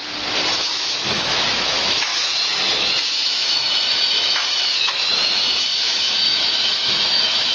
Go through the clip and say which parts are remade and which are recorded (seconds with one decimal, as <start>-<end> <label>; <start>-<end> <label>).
0.0-0.6 recorded; 0.6-7.5 remade